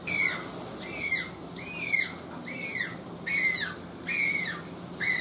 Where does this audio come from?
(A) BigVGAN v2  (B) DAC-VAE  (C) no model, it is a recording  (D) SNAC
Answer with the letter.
C